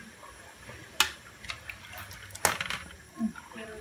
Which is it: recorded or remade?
recorded